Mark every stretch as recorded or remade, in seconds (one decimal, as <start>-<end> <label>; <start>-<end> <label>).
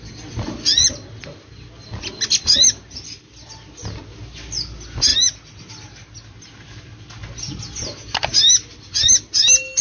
0.0-9.8 recorded